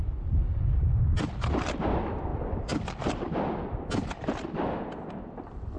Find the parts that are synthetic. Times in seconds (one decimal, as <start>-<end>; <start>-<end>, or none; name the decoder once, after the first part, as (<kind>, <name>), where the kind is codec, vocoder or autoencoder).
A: 1.2-5.8 (vocoder, BigVGAN v2)

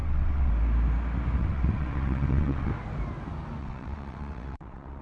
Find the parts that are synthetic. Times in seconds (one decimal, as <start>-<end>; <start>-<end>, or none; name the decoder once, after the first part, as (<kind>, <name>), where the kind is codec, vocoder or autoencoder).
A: 0.0-0.5 (vocoder, WaveNeXt); 1.4-2.7; 3.6-5.0

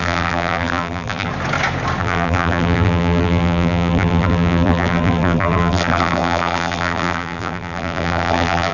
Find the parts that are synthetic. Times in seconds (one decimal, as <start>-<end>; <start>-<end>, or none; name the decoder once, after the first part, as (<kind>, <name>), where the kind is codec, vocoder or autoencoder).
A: 0.0-1.3 (vocoder, BigVGAN v2); 2.0-8.7